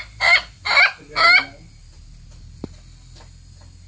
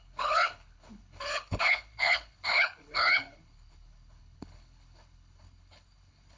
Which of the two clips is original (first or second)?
first